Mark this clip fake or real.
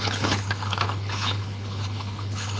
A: fake